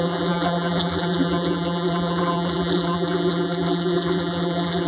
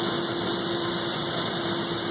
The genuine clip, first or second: second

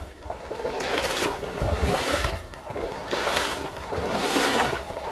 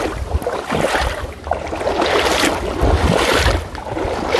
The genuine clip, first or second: second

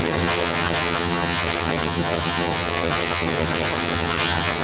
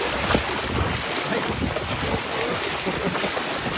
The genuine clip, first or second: second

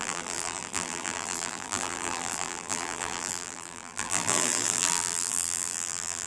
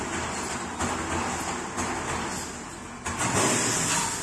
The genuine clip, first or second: second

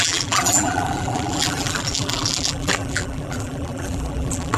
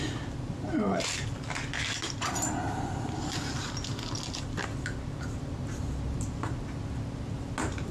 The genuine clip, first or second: second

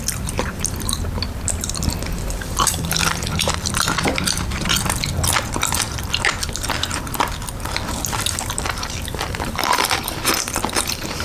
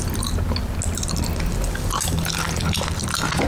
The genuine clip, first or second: second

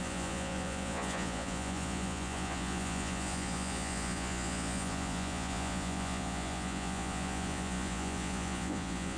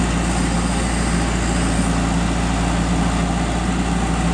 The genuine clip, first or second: second